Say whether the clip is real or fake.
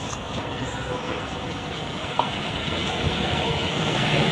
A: fake